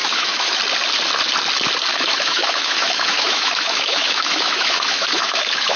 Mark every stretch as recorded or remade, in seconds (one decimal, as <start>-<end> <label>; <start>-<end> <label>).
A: 0.0-0.6 remade; 0.6-1.9 recorded; 1.9-5.8 remade

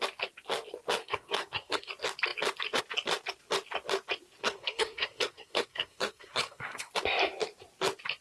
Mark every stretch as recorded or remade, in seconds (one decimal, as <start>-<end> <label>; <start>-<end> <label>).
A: 0.0-1.0 recorded; 1.0-1.9 remade; 1.9-4.4 recorded; 4.4-6.9 remade; 6.9-8.2 recorded

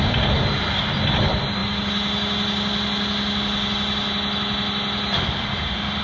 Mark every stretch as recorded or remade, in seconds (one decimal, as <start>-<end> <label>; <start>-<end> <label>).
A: 0.0-6.0 recorded

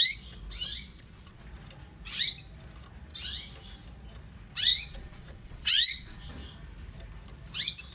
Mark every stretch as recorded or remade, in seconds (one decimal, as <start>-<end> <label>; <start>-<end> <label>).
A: 0.0-0.7 recorded; 0.7-1.4 remade; 1.4-4.7 recorded; 4.7-6.3 remade; 6.3-7.9 recorded

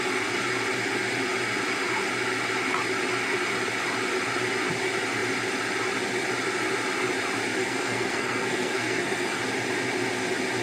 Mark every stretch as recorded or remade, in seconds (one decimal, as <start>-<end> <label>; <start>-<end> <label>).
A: 0.0-7.6 recorded; 7.6-9.4 remade; 9.4-10.6 recorded

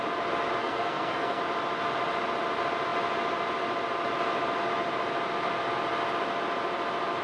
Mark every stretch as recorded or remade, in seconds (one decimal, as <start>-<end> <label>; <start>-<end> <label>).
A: 0.0-0.6 recorded; 0.6-1.4 remade; 1.4-7.2 recorded